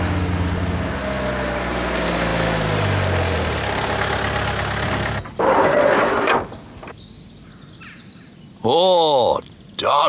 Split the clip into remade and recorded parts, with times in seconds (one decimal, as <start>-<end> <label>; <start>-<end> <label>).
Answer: 0.0-10.1 recorded